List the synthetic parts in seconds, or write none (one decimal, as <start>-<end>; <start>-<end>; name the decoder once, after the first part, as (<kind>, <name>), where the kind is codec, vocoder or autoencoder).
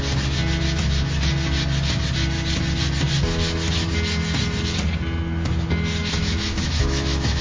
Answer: 6.0-7.4 (autoencoder, DAC-VAE)